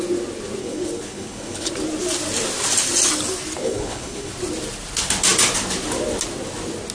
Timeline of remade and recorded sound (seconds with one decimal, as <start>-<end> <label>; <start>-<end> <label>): 0.0-0.6 recorded; 0.6-1.7 remade; 1.7-3.6 recorded; 3.6-4.3 remade; 4.3-6.9 recorded